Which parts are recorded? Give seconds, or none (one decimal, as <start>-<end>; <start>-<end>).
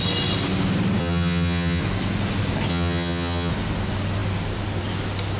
0.0-1.0; 1.8-2.7; 3.5-5.4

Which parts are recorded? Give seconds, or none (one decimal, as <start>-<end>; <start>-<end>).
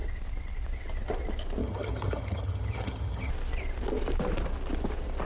0.0-1.6; 3.3-5.2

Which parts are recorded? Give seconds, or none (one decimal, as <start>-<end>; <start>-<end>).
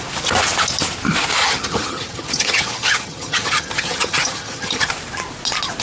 0.0-1.4; 4.9-5.8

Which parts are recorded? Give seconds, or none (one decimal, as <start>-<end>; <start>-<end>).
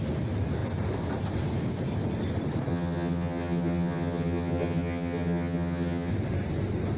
0.0-2.7; 6.1-7.0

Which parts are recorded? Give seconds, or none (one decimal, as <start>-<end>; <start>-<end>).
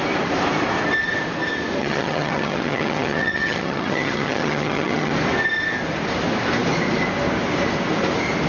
0.0-1.8; 5.1-8.5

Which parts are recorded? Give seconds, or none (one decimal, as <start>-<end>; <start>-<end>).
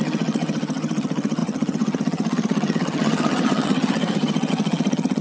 none